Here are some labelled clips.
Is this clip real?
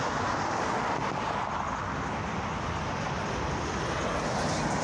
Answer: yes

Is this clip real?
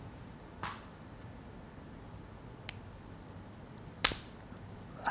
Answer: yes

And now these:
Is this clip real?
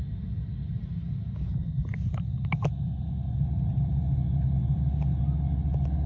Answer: yes